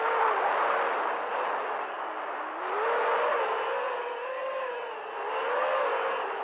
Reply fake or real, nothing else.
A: real